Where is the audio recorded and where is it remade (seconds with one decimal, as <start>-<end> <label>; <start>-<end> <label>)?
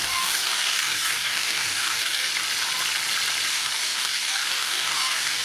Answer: 0.0-2.3 remade; 2.3-3.5 recorded; 3.5-5.4 remade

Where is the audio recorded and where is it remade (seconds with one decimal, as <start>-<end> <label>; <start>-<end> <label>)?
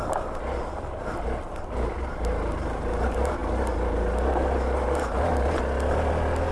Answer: 0.0-6.5 recorded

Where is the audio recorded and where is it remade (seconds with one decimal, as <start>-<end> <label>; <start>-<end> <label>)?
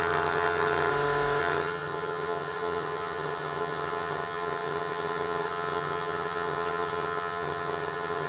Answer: 0.0-0.9 remade; 0.9-1.4 recorded; 1.4-8.3 remade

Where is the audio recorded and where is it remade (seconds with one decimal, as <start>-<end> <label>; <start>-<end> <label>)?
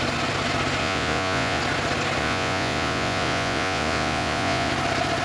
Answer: 0.0-0.8 recorded; 0.8-1.6 remade; 1.6-2.2 recorded; 2.2-4.7 remade; 4.7-5.2 recorded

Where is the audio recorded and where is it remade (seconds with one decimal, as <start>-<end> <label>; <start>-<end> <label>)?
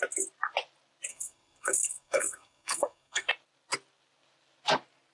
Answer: 0.0-1.1 recorded; 1.1-3.3 remade; 3.3-5.1 recorded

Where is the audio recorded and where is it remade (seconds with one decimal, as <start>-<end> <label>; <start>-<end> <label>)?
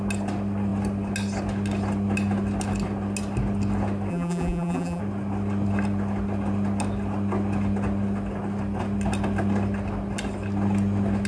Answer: 0.0-4.1 recorded; 4.1-5.0 remade; 5.0-11.3 recorded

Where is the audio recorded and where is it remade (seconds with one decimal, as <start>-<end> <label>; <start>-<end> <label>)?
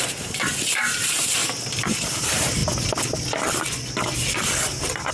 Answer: 0.0-1.4 remade; 1.4-2.2 recorded; 2.2-2.6 remade; 2.6-4.1 recorded; 4.1-5.1 remade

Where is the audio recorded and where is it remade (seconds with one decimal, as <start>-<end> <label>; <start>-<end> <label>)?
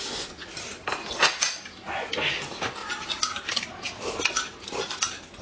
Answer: 0.0-5.4 recorded